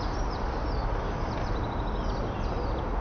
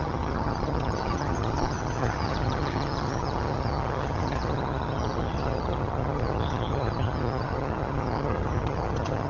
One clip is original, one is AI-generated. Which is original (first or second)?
first